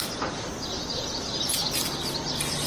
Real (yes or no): yes